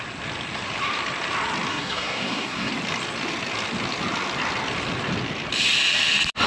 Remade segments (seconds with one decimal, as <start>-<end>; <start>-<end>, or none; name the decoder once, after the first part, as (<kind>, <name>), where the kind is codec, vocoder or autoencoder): 1.7-2.7 (codec, SNAC)